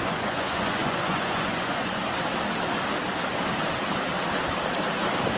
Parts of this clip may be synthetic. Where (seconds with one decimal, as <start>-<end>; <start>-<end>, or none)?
0.0-2.0